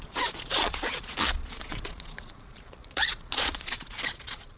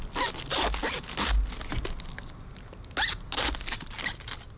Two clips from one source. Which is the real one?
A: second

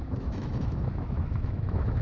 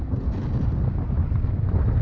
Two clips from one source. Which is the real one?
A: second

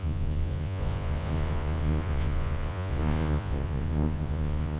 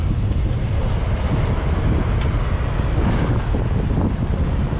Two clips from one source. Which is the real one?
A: second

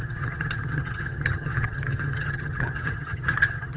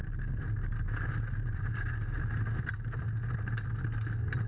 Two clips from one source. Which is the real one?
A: second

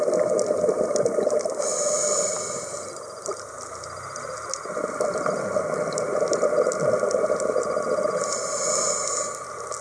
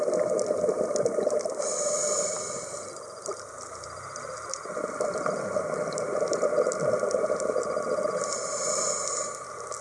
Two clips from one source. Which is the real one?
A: first